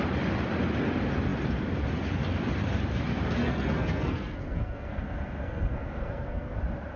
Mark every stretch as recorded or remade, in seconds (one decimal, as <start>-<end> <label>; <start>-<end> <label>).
0.0-3.4 recorded; 3.4-6.6 remade; 6.6-7.0 recorded